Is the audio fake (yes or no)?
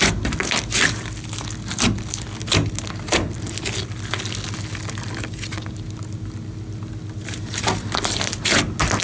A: no